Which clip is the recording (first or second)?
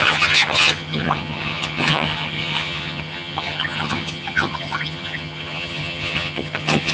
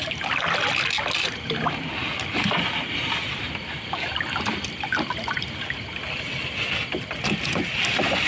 second